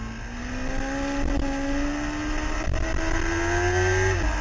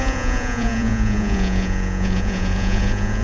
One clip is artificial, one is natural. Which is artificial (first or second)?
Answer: second